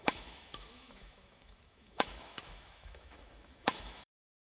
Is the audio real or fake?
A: fake